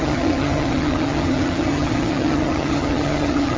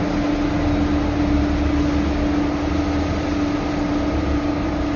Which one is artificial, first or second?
first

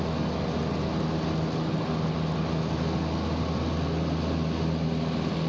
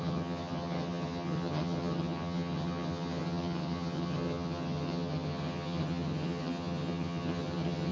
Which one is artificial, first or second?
second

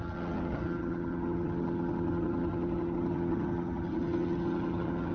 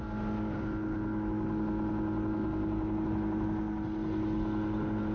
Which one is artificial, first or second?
first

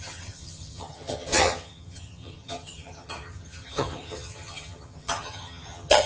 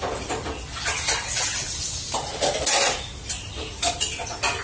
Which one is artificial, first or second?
first